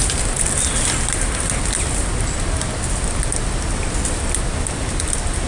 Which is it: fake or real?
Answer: real